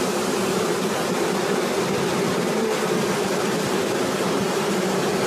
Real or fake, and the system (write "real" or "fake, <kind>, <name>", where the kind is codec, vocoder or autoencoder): real